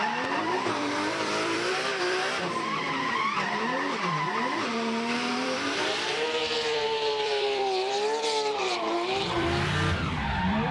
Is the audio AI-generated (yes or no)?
yes